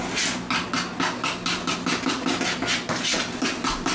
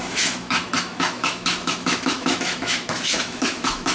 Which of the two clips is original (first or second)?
first